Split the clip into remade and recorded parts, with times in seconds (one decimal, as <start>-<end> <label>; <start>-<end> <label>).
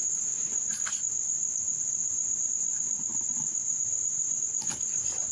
0.0-2.5 remade; 2.5-3.1 recorded; 3.1-4.4 remade; 4.4-5.3 recorded